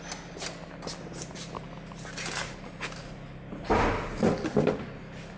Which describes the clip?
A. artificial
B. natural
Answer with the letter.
B